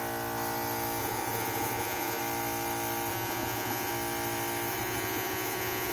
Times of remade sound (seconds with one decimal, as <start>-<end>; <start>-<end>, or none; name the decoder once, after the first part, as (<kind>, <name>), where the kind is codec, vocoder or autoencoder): 1.0-2.2 (vocoder, Vocos); 3.1-3.9; 4.7-5.9